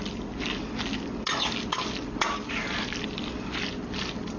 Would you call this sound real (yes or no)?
yes